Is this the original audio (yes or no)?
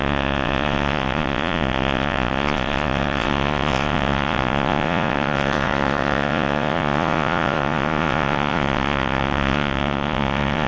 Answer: no